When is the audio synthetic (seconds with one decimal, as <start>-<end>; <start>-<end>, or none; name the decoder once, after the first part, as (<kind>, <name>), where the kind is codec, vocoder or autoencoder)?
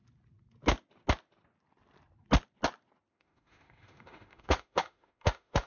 3.1-5.7 (autoencoder, DAC-VAE)